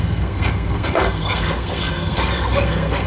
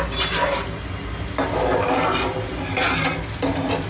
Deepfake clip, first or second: first